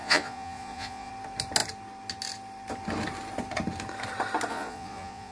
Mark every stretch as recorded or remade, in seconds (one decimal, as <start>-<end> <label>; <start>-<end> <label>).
0.0-1.1 remade; 1.1-4.5 recorded; 4.5-5.3 remade

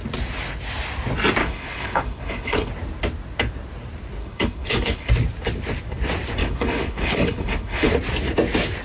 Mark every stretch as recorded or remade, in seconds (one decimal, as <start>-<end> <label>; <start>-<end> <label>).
0.0-1.4 recorded; 1.4-2.7 remade; 2.7-4.2 recorded; 4.2-5.1 remade; 5.1-6.4 recorded; 6.4-7.9 remade; 7.9-8.8 recorded